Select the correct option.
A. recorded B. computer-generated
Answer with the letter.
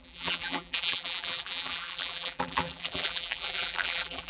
B